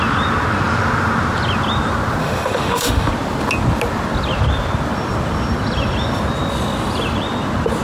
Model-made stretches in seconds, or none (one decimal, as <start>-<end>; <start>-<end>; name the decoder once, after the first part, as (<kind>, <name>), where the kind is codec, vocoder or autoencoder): 2.2-3.1 (autoencoder, DAC-VAE)